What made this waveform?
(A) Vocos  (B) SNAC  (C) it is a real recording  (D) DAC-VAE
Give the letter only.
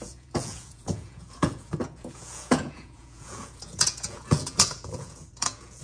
A